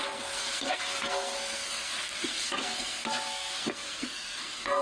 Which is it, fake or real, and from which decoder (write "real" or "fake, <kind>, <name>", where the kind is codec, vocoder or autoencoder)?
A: fake, codec, SNAC